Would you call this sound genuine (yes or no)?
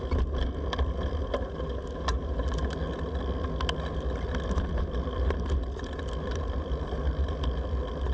yes